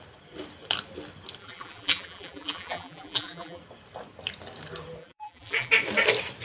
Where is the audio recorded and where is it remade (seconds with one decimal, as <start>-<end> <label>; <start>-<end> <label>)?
0.0-1.4 recorded; 1.4-3.6 remade; 3.6-5.0 recorded; 5.0-5.7 remade; 5.7-6.4 recorded

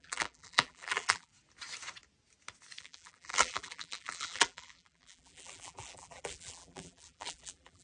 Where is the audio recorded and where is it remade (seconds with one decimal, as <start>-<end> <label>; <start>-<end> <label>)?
0.0-1.3 remade; 1.3-2.8 recorded; 2.8-7.8 remade